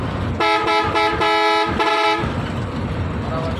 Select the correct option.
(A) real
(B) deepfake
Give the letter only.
A